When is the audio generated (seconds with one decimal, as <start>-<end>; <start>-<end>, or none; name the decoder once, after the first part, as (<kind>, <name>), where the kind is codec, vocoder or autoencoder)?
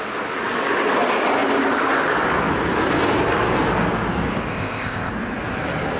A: 4.5-5.1 (codec, ZipCodec)